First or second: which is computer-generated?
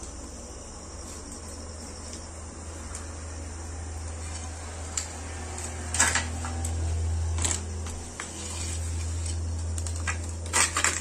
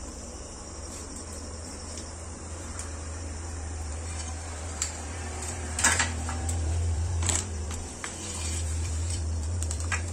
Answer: second